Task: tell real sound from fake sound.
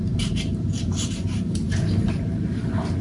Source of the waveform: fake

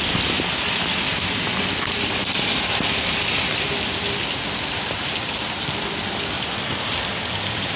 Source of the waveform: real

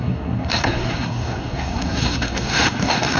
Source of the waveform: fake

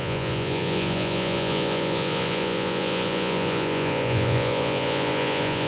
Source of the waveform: fake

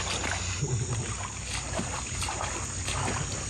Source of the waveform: real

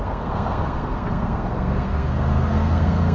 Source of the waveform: fake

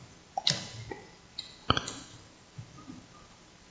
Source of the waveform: real